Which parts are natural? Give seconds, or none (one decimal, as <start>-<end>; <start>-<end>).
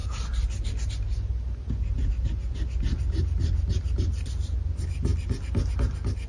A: 0.0-6.3